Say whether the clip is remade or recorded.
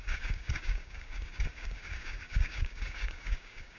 remade